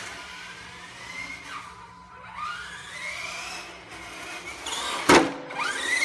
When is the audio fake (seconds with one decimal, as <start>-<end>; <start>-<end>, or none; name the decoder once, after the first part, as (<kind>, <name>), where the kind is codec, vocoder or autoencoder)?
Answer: 4.5-5.1 (vocoder, BigVGAN v2)